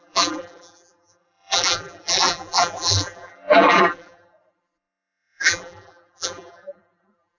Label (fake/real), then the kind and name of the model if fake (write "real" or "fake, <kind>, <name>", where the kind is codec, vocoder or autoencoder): fake, vocoder, BigVGAN v2